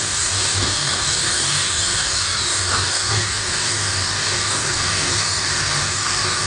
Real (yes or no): no